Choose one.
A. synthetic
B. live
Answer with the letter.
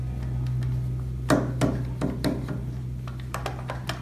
B